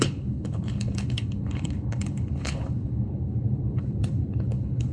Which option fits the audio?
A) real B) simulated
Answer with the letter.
B